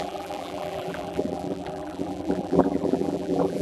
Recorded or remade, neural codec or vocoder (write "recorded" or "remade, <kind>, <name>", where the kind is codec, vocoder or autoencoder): remade, vocoder, BigVGAN v2